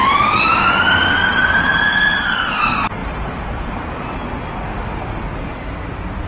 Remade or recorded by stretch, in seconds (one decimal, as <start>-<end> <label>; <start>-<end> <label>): 0.0-0.7 remade; 0.7-1.3 recorded; 1.3-2.6 remade; 2.6-3.0 recorded; 3.0-3.9 remade; 3.9-6.3 recorded